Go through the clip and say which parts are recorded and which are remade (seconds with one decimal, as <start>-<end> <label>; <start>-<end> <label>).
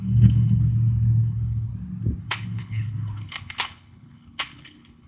0.0-0.7 remade; 0.7-1.2 recorded; 1.2-1.7 remade; 1.7-2.2 recorded; 2.2-5.1 remade